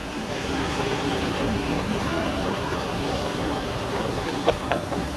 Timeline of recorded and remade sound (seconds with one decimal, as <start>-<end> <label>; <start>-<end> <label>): 0.0-5.2 remade